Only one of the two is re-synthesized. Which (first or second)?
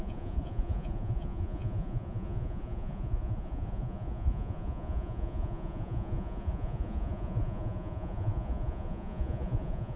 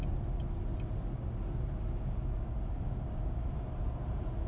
first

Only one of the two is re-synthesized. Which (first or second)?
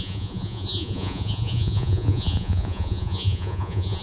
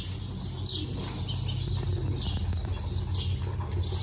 first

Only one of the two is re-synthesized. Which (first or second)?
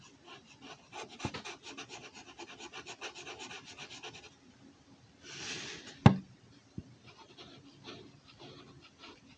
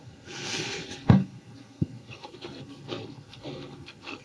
second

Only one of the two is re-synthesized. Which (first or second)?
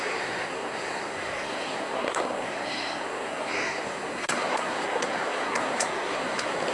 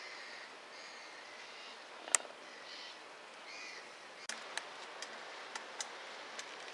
first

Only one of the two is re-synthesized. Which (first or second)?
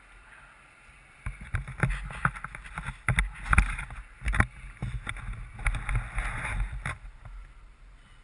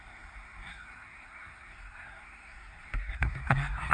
second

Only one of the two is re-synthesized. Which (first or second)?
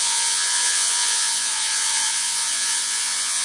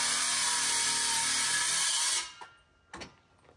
first